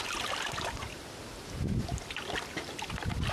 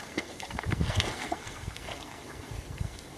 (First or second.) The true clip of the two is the first